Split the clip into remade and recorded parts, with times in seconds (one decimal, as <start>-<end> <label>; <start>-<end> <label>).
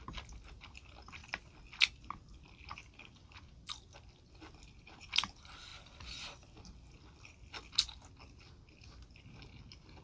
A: 0.0-10.0 recorded